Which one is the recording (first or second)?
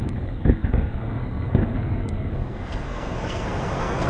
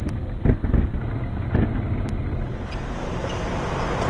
second